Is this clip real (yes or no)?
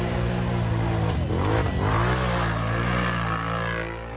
yes